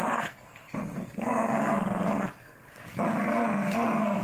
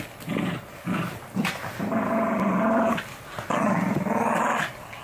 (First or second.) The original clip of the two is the second